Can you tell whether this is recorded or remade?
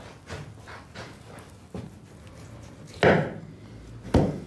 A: recorded